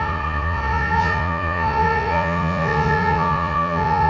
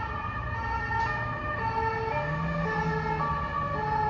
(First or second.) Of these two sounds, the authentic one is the second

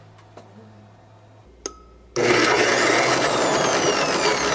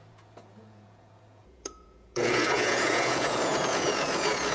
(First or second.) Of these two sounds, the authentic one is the first